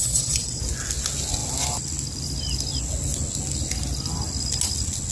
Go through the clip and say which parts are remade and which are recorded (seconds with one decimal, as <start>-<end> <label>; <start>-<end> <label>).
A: 0.0-0.6 remade; 0.6-5.1 recorded